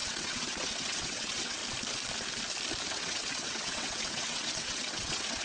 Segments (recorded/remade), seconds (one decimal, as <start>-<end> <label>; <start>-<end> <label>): 0.0-1.6 remade; 1.6-2.9 recorded; 2.9-5.4 remade

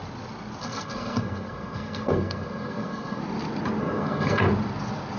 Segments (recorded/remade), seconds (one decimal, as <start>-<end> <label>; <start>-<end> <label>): 0.0-0.6 recorded; 0.6-3.2 remade; 3.2-3.8 recorded; 3.8-4.4 remade; 4.4-5.2 recorded

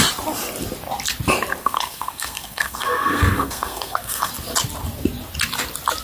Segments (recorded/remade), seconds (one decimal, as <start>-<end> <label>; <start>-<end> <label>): 0.0-1.6 recorded; 1.6-4.3 remade; 4.3-6.0 recorded

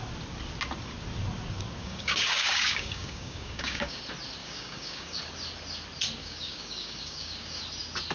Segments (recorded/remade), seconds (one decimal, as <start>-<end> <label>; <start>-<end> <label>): 0.0-1.8 recorded; 1.8-4.0 remade; 4.0-4.4 recorded; 4.4-5.2 remade; 5.2-6.2 recorded; 6.2-7.6 remade; 7.6-8.1 recorded

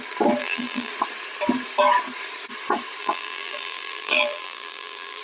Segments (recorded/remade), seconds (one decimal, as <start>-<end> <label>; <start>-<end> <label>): 0.0-0.4 recorded; 0.4-0.9 remade; 0.9-3.0 recorded; 3.0-5.2 remade

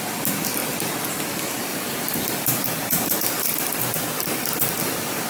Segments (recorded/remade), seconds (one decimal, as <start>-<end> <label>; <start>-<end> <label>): 0.0-1.7 recorded; 1.7-5.3 remade